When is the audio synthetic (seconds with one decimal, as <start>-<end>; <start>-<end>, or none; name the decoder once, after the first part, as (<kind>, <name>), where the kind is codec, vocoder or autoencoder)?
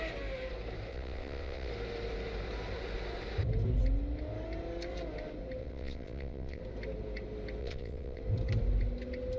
0.9-1.7 (vocoder, WaveNeXt); 5.6-6.6; 7.6-8.2